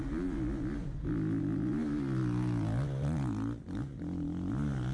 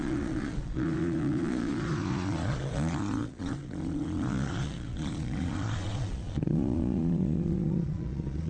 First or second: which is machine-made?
second